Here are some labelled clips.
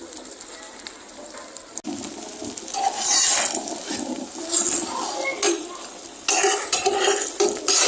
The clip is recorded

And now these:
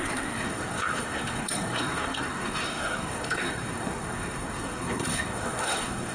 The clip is remade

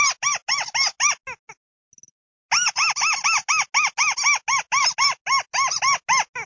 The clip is recorded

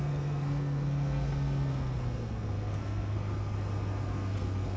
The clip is remade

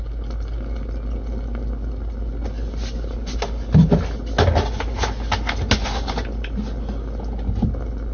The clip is recorded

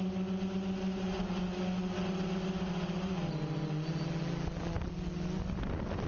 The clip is recorded